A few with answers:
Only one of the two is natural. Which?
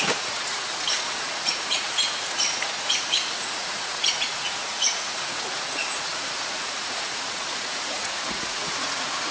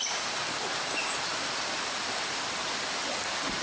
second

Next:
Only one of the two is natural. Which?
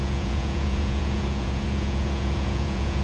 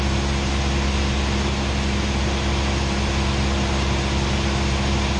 second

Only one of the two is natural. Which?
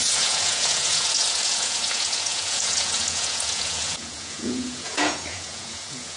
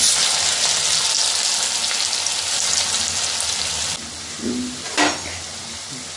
second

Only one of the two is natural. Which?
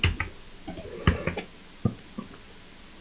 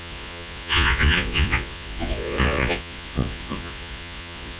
first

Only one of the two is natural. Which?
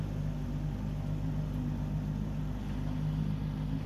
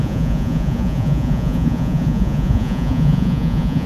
first